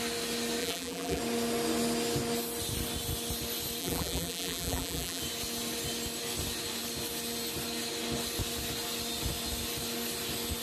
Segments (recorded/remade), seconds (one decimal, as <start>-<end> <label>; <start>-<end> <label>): 0.0-0.6 recorded; 0.6-1.2 remade; 1.2-3.8 recorded; 3.8-5.2 remade; 5.2-10.6 recorded